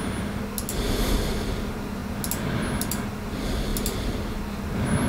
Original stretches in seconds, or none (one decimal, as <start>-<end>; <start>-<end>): 0.0-5.1